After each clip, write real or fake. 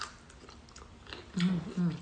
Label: real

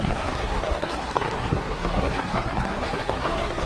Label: fake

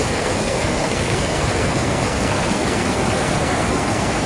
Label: fake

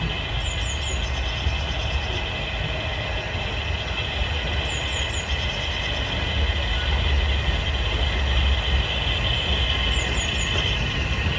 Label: real